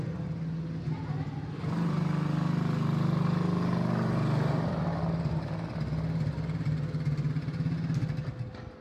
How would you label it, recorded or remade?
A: recorded